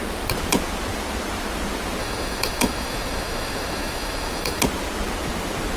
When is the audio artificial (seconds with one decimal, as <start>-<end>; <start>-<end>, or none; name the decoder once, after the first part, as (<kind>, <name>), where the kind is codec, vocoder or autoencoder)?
2.0-4.6 (autoencoder, DAC-VAE)